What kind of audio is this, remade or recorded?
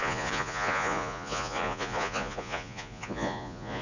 remade